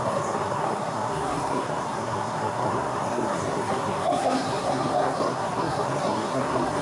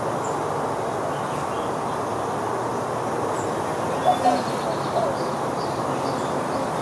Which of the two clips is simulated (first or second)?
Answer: first